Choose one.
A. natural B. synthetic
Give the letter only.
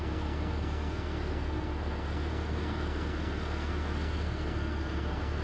B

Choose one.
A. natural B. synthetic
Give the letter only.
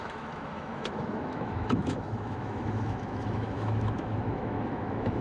B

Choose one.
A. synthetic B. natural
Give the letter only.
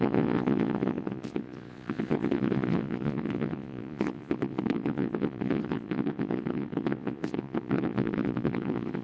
A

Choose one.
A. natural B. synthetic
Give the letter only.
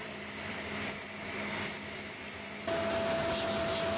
A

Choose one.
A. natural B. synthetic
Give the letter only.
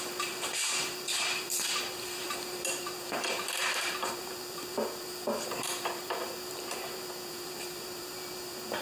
B